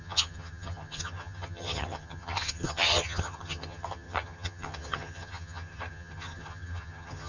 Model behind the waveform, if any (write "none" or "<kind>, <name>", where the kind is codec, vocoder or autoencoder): vocoder, HiFi-GAN